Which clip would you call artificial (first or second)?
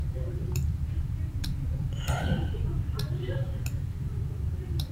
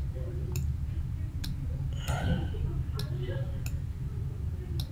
first